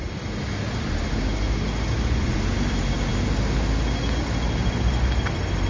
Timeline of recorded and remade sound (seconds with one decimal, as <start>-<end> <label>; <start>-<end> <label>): 0.0-5.7 recorded